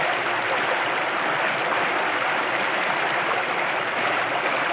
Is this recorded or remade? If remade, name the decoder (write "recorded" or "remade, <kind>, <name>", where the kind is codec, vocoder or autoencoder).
recorded